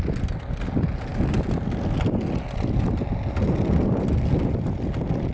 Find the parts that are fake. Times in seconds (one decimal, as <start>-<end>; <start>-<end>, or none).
none